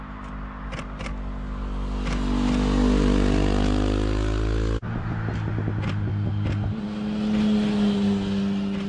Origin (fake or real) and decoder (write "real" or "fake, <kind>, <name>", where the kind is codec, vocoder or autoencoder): real